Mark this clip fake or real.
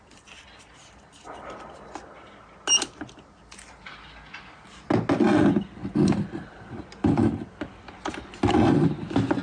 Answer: real